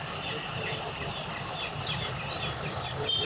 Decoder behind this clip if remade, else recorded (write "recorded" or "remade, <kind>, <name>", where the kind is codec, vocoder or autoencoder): recorded